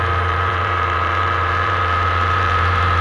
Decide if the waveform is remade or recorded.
remade